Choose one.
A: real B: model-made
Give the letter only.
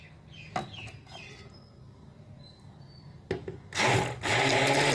A